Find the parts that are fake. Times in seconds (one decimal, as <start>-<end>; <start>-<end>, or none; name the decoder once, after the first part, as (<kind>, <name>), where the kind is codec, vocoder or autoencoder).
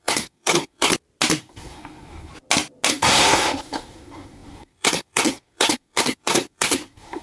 0.0-0.9 (codec, SNAC); 1.4-2.3; 2.9-7.2